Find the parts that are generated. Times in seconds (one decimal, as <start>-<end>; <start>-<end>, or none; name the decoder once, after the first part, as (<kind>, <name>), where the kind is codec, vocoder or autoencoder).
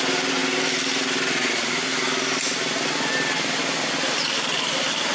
none